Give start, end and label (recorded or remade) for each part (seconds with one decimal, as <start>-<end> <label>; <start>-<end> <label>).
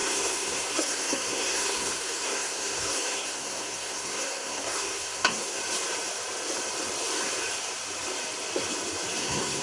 0.0-5.6 remade; 5.6-9.2 recorded; 9.2-9.6 remade